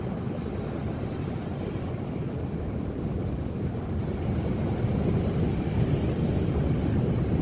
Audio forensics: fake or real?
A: real